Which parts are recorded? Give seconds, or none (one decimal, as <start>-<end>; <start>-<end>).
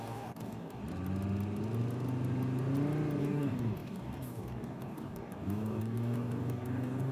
0.8-3.2